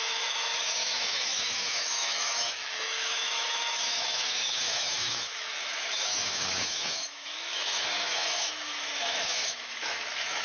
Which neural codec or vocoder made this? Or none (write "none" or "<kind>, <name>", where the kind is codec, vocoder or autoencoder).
autoencoder, DAC-VAE